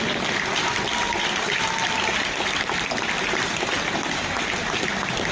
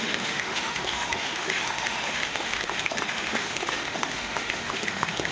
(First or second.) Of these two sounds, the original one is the first